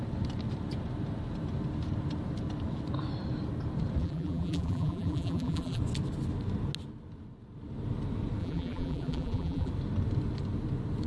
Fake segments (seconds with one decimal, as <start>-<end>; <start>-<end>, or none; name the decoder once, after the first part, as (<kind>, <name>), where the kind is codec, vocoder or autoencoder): 4.0-5.8 (vocoder, BigVGAN v2); 8.4-9.7